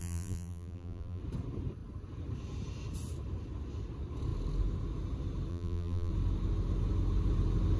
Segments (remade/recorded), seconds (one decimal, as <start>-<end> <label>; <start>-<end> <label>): 0.0-1.2 remade; 1.2-5.5 recorded; 5.5-6.1 remade; 6.1-7.8 recorded